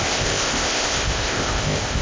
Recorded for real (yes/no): no